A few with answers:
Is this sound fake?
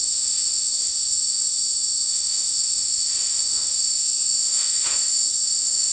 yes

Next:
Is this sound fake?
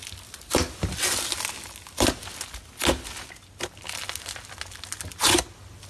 no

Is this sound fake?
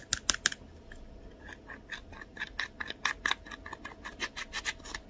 no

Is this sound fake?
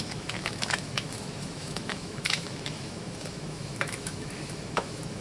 yes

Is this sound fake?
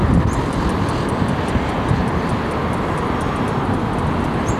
no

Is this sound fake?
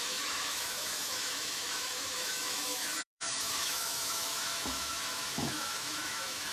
yes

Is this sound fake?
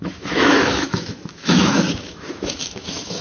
yes